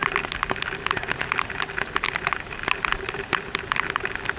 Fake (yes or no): no